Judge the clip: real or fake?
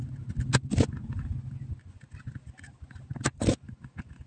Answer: real